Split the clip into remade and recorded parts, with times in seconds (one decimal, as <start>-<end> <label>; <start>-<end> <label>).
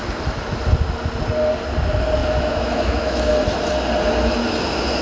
0.0-2.2 recorded; 2.2-3.3 remade; 3.3-5.0 recorded